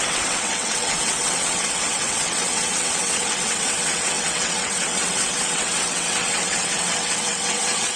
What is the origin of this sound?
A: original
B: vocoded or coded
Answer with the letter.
B